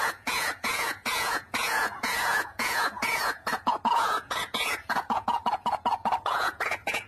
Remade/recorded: remade